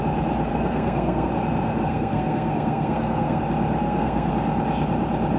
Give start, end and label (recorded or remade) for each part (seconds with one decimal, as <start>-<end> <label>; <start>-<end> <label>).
0.0-0.5 recorded; 0.5-1.3 remade; 1.3-1.8 recorded; 1.8-3.4 remade; 3.4-3.8 recorded; 3.8-4.3 remade; 4.3-5.4 recorded